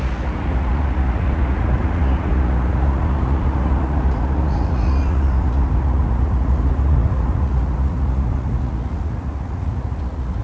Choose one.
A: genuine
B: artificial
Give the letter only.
B